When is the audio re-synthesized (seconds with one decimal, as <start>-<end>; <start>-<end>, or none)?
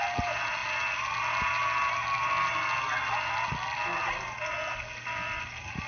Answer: none